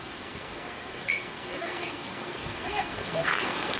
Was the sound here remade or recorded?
remade